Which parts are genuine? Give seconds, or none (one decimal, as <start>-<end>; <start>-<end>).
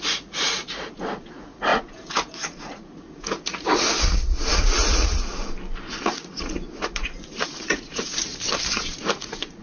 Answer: 5.3-6.1; 8.3-8.8